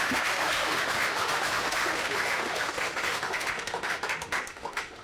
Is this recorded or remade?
remade